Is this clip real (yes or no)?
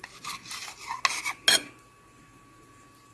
yes